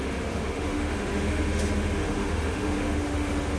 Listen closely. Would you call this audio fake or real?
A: fake